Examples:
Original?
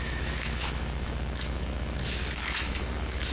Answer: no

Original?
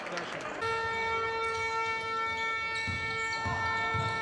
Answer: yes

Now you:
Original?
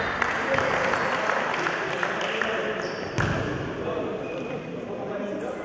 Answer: yes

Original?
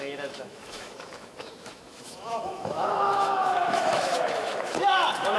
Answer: no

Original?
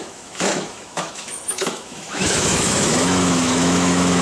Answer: no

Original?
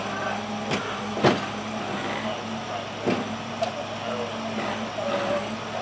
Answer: yes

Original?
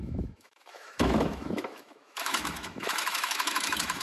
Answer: no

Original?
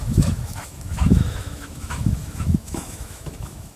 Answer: no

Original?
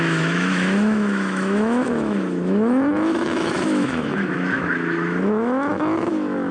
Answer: no